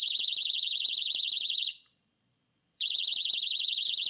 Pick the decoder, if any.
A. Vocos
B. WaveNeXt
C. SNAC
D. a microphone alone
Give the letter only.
A